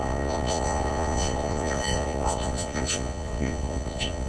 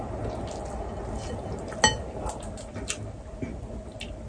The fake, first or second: first